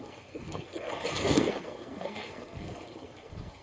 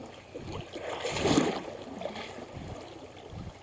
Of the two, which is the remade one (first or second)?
first